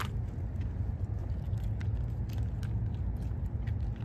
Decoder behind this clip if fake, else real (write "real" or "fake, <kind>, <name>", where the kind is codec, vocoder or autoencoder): real